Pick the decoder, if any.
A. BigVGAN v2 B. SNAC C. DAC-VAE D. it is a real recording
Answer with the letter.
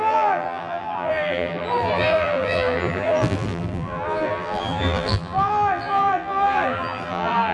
A